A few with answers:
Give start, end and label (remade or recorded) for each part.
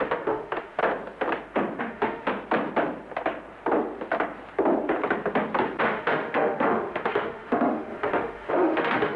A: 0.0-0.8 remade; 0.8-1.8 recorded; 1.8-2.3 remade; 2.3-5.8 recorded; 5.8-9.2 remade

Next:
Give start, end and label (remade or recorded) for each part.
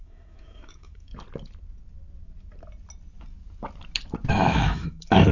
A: 0.0-1.1 remade; 1.1-4.3 recorded; 4.3-5.3 remade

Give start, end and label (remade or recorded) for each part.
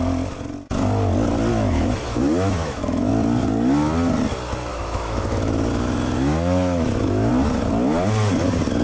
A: 0.0-1.5 recorded; 1.5-3.1 remade; 3.1-4.7 recorded; 4.7-7.3 remade; 7.3-8.8 recorded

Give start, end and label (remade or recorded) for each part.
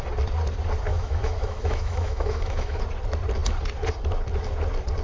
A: 0.0-0.9 recorded; 0.9-2.8 remade; 2.8-5.0 recorded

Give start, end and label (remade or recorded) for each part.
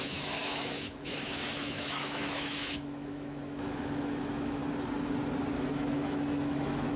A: 0.0-4.6 remade; 4.6-5.5 recorded; 5.5-7.0 remade